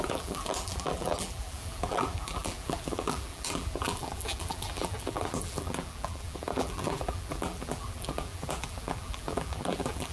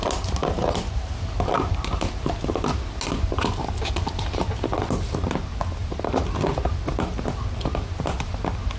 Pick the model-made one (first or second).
first